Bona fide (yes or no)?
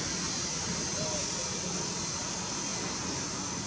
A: yes